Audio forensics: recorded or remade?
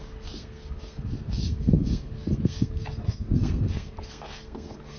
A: remade